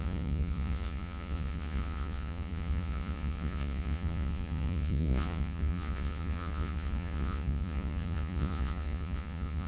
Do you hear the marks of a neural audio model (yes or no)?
yes